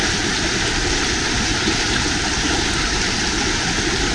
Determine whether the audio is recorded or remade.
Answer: remade